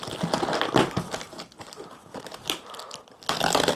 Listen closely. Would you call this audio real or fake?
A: real